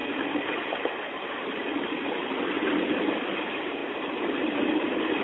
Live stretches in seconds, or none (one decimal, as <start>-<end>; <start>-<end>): 0.0-5.2